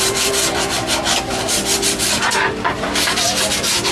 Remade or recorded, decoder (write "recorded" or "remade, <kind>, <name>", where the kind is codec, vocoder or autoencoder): remade, vocoder, BigVGAN v2